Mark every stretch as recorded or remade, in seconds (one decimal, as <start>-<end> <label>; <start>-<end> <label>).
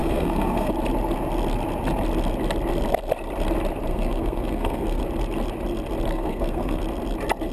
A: 0.0-0.7 remade; 0.7-3.9 recorded; 3.9-5.0 remade; 5.0-6.1 recorded; 6.1-6.8 remade; 6.8-7.5 recorded